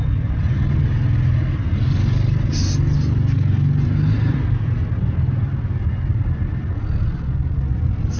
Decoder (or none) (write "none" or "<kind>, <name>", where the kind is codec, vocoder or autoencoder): none